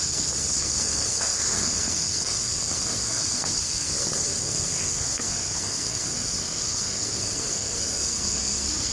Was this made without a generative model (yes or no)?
no